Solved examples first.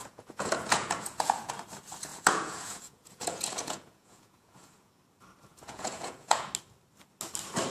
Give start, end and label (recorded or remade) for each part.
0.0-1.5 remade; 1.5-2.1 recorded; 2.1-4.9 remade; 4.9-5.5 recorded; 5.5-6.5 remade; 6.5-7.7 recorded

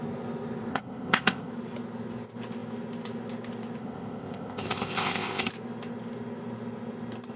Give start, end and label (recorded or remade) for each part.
0.0-0.7 recorded; 0.7-1.5 remade; 1.5-3.8 recorded; 3.8-5.5 remade; 5.5-7.4 recorded

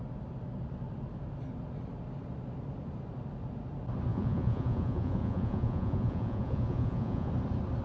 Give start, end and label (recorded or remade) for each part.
0.0-4.1 recorded; 4.1-7.3 remade; 7.3-7.8 recorded

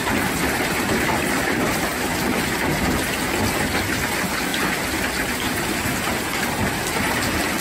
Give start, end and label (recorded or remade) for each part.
0.0-7.6 recorded

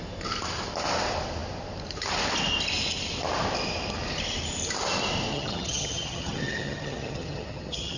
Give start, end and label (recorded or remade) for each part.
0.0-5.3 recorded; 5.3-8.0 remade

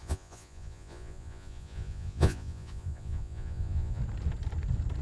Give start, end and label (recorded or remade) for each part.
0.0-4.0 remade; 4.0-5.0 recorded